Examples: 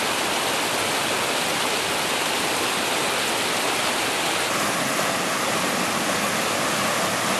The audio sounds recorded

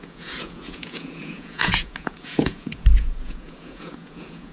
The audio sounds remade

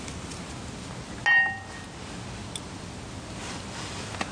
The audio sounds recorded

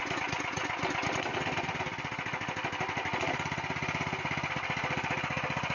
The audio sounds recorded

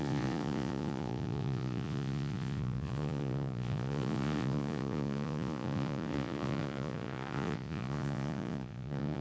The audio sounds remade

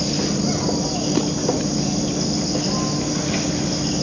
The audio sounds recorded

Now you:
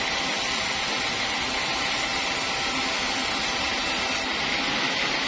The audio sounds recorded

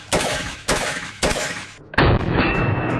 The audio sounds remade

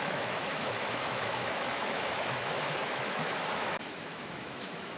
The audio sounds remade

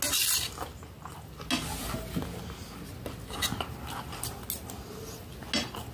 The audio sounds recorded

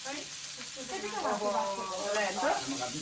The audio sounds recorded